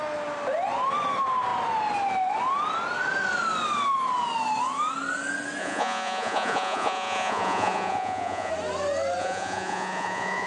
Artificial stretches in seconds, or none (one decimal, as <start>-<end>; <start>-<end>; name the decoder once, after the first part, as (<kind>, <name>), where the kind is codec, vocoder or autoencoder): 5.6-8.5 (vocoder, Vocos); 9.2-10.5